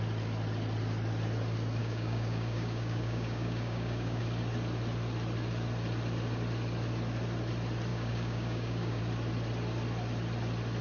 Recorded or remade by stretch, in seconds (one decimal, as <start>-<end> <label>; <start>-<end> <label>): 0.0-1.8 recorded; 1.8-4.2 remade; 4.2-7.9 recorded; 7.9-9.0 remade; 9.0-10.8 recorded